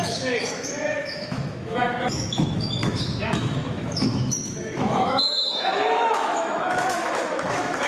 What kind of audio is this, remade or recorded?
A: remade